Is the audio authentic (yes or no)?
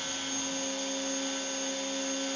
yes